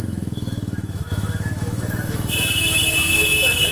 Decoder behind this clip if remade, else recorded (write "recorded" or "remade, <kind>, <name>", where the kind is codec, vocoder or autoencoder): remade, autoencoder, DAC-VAE